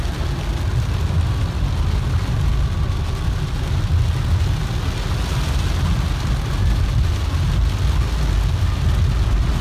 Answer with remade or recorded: recorded